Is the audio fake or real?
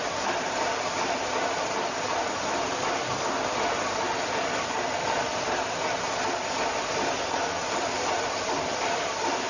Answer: real